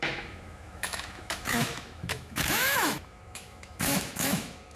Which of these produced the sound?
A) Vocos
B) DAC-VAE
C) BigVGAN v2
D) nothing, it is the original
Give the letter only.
B